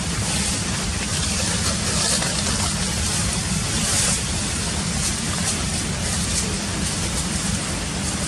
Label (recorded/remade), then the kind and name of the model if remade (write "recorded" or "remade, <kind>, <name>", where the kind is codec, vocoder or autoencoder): recorded